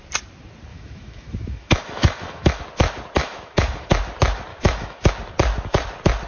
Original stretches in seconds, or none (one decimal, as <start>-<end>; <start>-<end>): 0.0-0.7; 2.6-3.2; 3.9-4.5; 5.1-6.3